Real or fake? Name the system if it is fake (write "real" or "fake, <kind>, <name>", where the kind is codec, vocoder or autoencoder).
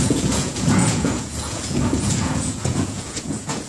fake, vocoder, Vocos